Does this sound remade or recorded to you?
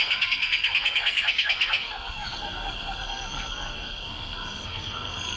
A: remade